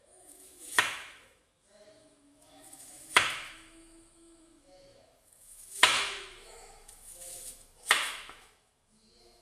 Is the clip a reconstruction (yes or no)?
yes